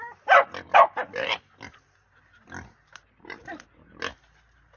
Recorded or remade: recorded